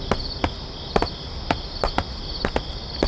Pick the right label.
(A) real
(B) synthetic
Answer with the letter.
A